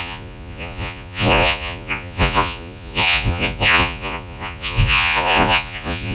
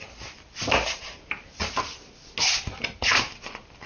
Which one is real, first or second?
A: second